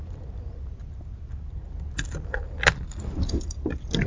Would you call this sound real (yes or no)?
yes